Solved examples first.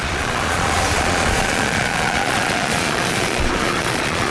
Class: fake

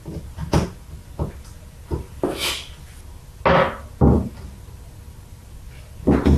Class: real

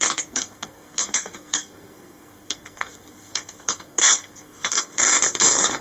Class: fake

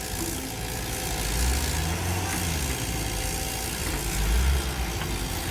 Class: real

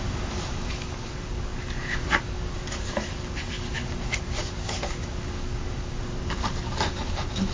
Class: fake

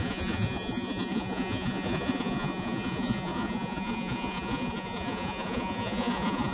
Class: fake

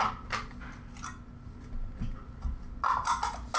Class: real